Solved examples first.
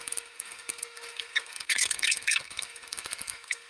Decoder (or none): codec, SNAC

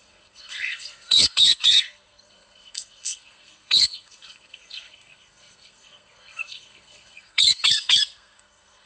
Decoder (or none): codec, SNAC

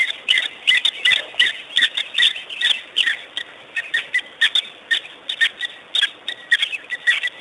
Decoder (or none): none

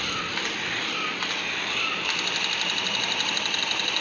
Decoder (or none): none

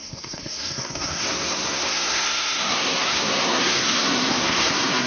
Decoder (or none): codec, SNAC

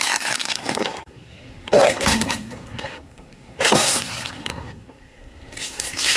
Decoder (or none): codec, SNAC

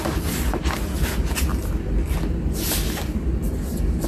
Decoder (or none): none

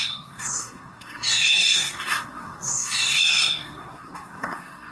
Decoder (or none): codec, SNAC